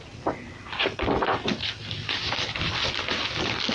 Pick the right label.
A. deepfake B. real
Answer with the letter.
B